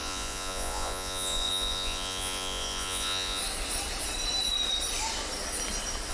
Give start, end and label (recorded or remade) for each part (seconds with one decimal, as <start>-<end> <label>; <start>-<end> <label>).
0.0-3.4 remade; 3.4-6.1 recorded